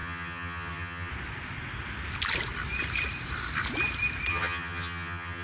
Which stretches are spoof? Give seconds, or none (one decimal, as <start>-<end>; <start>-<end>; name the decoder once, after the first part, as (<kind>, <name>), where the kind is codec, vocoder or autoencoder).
0.0-1.1 (vocoder, HiFi-GAN); 4.3-5.4